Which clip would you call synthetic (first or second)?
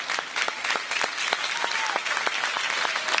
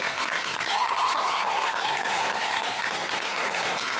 second